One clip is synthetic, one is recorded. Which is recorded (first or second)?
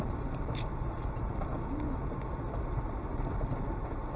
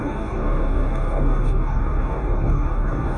first